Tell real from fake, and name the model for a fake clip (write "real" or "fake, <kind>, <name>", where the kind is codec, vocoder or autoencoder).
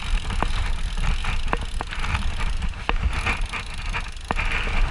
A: real